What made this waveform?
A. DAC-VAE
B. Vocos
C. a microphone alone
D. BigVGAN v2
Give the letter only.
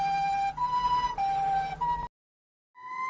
C